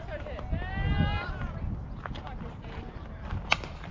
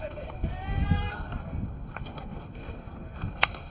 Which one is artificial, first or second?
second